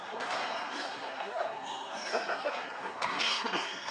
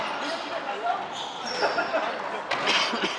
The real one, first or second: second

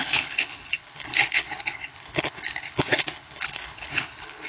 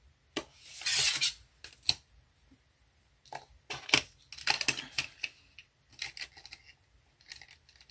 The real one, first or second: second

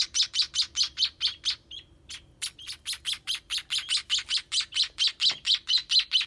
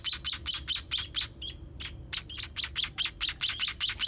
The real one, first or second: second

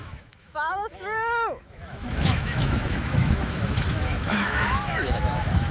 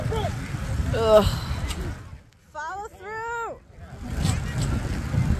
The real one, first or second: second